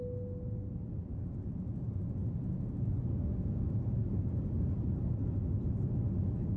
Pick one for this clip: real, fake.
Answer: real